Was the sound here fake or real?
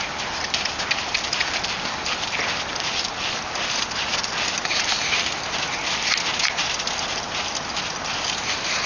real